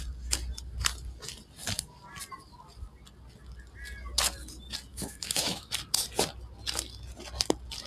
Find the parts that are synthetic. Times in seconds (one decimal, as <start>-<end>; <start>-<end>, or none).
4.9-5.7